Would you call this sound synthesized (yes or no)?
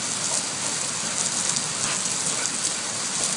no